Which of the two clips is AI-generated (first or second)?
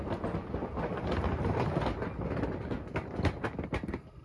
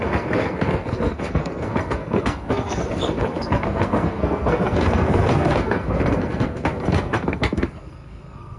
second